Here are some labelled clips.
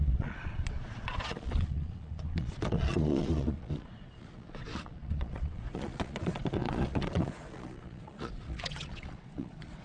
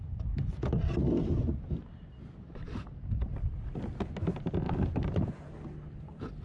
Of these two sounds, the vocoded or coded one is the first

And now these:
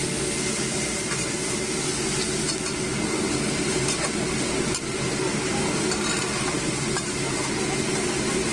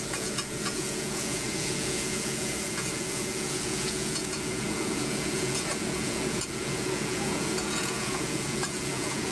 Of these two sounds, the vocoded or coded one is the second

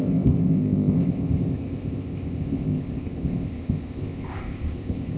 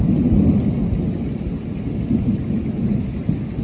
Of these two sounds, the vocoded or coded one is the first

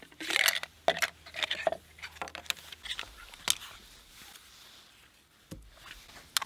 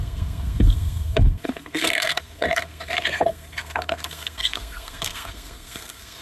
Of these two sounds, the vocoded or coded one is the second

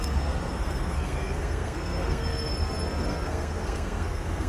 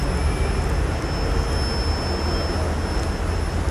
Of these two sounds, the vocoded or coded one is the first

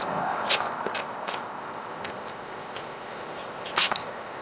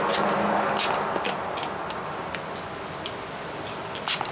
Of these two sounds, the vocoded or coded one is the first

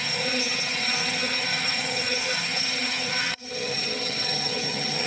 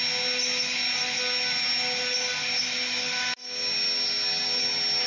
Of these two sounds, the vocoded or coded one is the first